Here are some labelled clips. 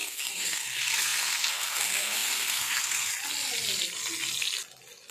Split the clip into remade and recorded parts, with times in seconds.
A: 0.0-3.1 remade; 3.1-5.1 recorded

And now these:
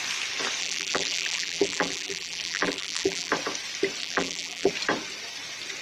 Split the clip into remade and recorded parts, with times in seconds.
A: 0.0-0.6 recorded; 0.6-3.3 remade; 3.3-4.0 recorded; 4.0-4.7 remade; 4.7-5.8 recorded

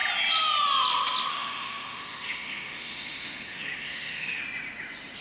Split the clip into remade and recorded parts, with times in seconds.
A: 0.0-1.3 recorded; 1.3-4.4 remade; 4.4-5.2 recorded

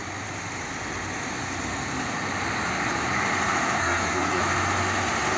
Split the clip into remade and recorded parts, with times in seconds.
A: 0.0-3.8 recorded; 3.8-4.4 remade; 4.4-5.4 recorded

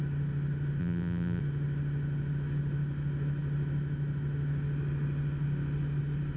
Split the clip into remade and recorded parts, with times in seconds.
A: 0.0-0.8 recorded; 0.8-1.4 remade; 1.4-6.4 recorded

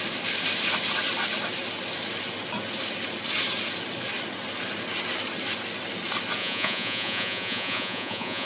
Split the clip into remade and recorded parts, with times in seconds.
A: 0.0-6.4 recorded; 6.4-8.5 remade

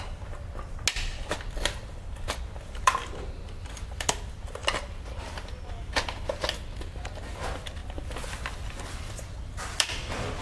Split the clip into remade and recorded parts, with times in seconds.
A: 0.0-10.4 recorded

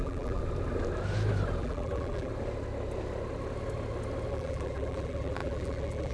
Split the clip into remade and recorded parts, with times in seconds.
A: 0.0-0.4 remade; 0.4-1.6 recorded; 1.6-2.3 remade; 2.3-4.3 recorded; 4.3-6.1 remade